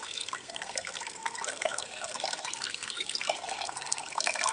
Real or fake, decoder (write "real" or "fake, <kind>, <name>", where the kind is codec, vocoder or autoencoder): fake, codec, SNAC